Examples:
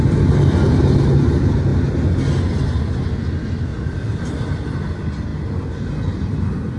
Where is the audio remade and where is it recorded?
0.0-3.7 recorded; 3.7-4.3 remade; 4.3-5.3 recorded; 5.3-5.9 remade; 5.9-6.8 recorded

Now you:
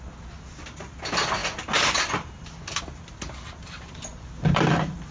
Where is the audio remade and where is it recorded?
0.0-4.1 recorded; 4.1-5.1 remade